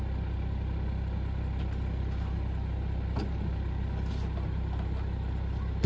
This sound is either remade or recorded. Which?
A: recorded